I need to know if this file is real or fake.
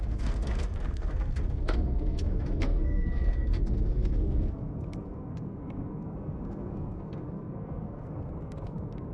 fake